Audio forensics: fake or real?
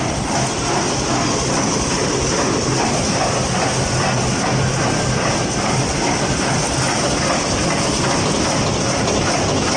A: real